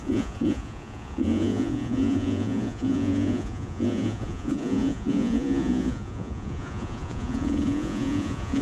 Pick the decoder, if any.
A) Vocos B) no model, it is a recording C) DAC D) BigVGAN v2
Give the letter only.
A